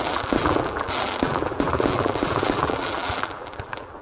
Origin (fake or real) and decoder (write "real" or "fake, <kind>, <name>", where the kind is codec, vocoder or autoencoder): fake, vocoder, BigVGAN v2